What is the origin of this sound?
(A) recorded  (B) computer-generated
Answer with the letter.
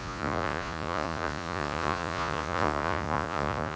B